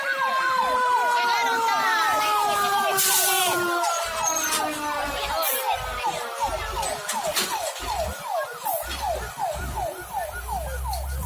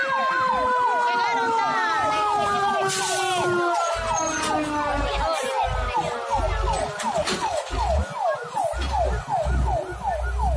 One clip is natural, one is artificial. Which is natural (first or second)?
second